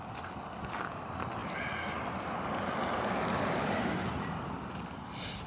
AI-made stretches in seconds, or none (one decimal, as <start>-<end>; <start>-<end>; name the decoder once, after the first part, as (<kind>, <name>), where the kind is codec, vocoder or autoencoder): none